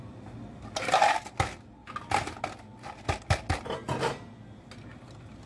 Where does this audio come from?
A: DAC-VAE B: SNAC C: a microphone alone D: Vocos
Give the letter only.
C